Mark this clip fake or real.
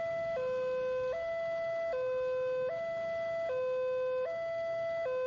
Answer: real